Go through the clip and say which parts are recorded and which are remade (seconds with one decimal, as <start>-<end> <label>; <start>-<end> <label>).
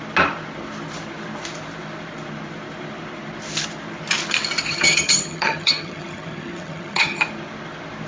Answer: 0.0-4.7 recorded; 4.7-7.2 remade; 7.2-8.1 recorded